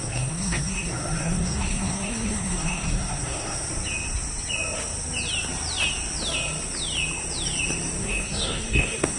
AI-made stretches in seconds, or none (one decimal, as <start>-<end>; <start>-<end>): 0.0-3.7; 8.0-9.2